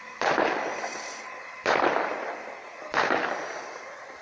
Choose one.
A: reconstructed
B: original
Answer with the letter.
A